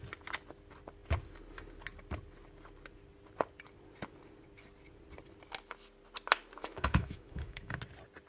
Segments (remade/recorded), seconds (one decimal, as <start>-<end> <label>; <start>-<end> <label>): 0.0-6.6 recorded; 6.6-7.8 remade; 7.8-8.3 recorded